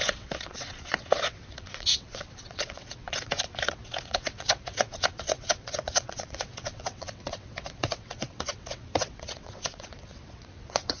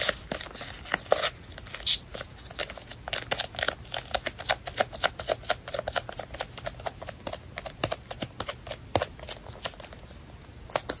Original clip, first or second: second